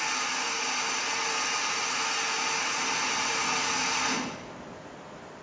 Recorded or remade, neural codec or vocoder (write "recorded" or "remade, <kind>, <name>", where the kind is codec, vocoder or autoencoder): recorded